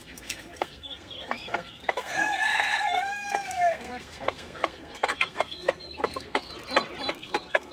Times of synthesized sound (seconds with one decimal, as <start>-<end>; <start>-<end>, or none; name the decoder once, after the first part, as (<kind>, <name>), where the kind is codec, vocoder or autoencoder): 0.0-6.5 (codec, SNAC); 7.1-7.7